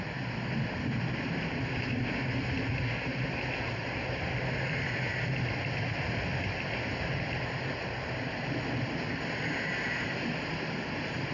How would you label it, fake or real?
real